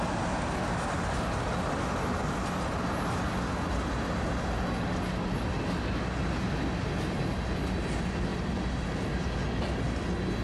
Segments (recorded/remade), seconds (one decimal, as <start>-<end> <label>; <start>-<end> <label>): 0.0-10.4 recorded